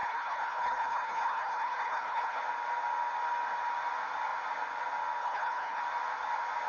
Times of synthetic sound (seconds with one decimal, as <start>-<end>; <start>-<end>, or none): 0.0-2.4; 5.2-5.8